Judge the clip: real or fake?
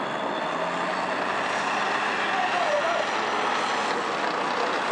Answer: real